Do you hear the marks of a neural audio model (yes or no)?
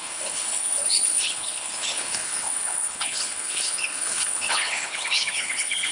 yes